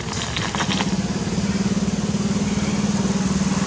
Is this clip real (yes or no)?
yes